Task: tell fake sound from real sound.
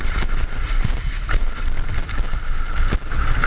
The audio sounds real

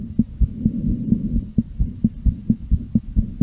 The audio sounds real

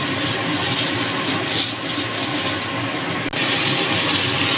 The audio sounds real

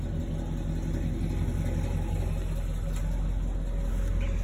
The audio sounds real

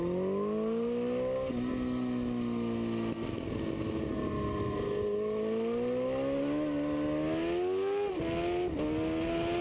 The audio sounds real